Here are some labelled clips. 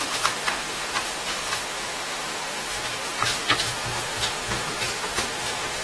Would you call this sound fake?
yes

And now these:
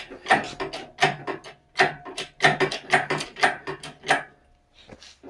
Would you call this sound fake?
no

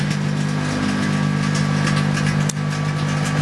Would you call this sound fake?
no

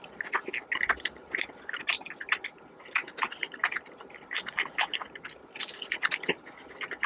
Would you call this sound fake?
no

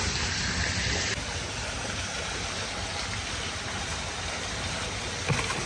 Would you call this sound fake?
no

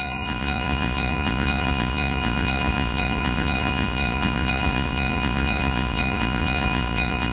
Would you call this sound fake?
yes